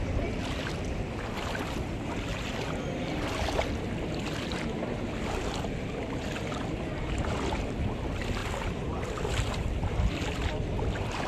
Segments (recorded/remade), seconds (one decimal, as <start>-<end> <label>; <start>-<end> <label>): 0.0-11.3 recorded